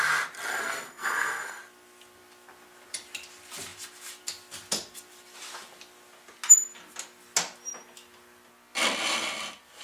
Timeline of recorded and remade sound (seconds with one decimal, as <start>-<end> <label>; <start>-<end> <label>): 0.0-0.5 recorded; 0.5-1.6 remade; 1.6-9.8 recorded